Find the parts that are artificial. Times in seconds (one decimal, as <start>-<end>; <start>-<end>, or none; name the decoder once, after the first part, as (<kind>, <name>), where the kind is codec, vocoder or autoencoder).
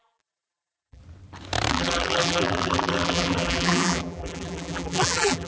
0.0-1.0 (vocoder, BigVGAN v2); 1.7-5.5